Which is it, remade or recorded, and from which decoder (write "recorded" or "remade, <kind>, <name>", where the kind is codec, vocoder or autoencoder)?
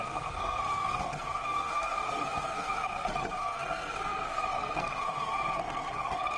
remade, codec, SNAC